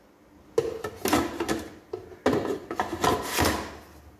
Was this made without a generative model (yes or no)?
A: yes